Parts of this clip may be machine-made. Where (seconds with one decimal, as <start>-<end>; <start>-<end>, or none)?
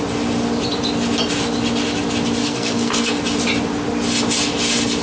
2.4-3.2